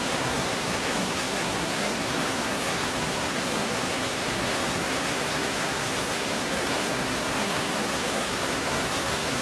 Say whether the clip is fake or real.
fake